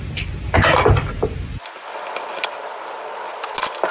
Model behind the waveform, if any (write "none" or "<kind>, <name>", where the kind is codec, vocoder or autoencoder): none